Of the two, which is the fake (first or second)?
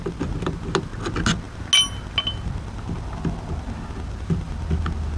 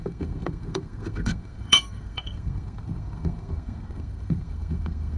second